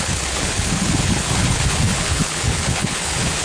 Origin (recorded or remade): remade